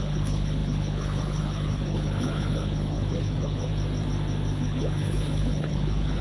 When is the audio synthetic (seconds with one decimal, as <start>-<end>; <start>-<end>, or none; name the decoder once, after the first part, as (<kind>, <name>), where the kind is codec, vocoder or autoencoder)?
0.0-3.7 (codec, HILCodec); 4.6-6.2